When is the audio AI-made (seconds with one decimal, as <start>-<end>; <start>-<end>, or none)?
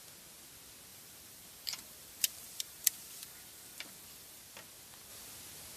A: 0.9-4.4